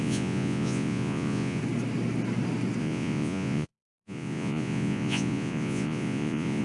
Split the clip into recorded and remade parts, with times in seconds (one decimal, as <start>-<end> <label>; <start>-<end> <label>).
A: 0.0-1.6 remade; 1.6-2.8 recorded; 2.8-6.6 remade